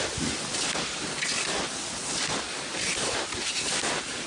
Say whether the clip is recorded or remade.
recorded